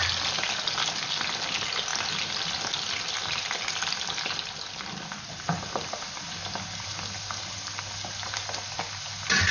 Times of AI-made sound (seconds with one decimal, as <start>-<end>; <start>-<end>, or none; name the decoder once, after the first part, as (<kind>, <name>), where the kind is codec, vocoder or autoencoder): none

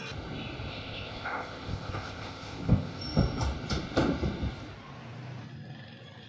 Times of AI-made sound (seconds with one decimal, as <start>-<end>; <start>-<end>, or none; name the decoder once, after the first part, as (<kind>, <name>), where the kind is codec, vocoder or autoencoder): 0.7-3.0 (codec, ZipCodec)

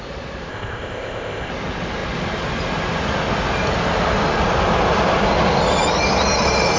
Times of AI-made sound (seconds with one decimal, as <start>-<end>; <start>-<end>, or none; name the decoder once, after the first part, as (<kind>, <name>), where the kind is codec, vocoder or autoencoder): 0.5-1.5 (codec, ZipCodec)

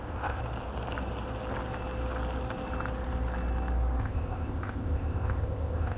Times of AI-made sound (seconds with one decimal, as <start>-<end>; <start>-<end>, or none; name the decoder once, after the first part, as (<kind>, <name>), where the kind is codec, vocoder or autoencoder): 0.0-0.4 (codec, ZipCodec); 4.0-6.0

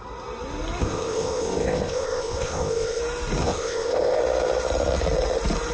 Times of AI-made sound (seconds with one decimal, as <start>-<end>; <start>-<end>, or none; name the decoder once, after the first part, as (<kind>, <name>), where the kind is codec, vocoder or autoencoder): 0.8-3.0 (codec, ZipCodec); 3.4-4.2

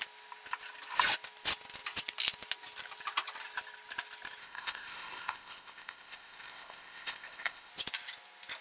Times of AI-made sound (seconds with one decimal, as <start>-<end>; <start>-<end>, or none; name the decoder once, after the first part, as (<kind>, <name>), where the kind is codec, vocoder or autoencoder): 4.4-7.7 (codec, ZipCodec)

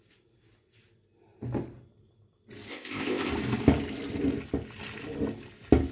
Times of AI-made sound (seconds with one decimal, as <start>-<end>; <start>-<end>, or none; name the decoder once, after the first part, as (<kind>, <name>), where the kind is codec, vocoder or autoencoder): 2.7-3.3 (codec, ZipCodec)